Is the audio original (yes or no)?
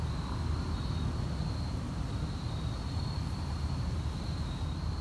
yes